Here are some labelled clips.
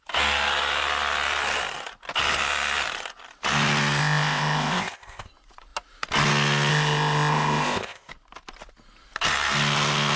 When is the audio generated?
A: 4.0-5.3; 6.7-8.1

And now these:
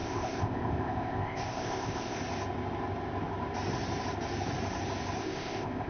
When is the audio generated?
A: 0.0-2.2; 5.2-5.9

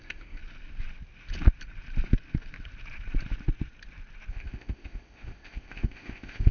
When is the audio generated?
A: 0.0-0.4; 4.3-6.5

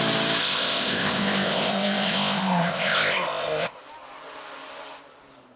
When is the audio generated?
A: 0.4-3.8

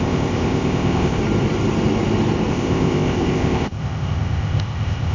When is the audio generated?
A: 0.0-1.2; 2.5-5.1